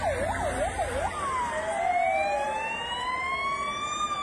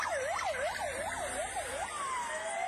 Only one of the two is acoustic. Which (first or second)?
first